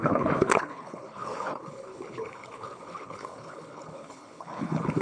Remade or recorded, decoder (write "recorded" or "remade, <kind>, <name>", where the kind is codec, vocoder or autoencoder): remade, codec, HILCodec